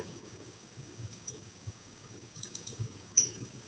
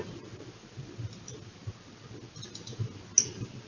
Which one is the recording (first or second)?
second